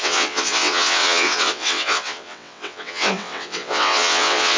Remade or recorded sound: remade